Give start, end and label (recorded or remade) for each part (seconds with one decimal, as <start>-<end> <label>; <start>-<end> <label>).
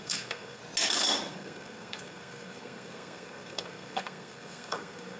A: 0.0-0.6 remade; 0.6-1.3 recorded; 1.3-5.2 remade